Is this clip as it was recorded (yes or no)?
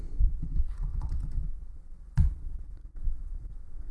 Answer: no